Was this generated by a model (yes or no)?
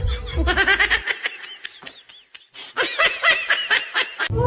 no